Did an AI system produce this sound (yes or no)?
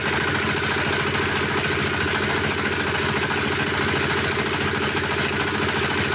no